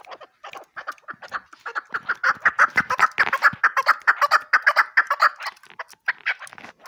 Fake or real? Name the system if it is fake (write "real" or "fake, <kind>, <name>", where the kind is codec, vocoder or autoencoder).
real